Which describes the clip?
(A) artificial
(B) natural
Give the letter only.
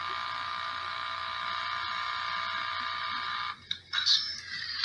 B